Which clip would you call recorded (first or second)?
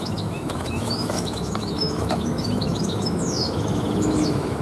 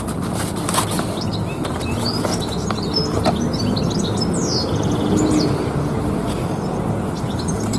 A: second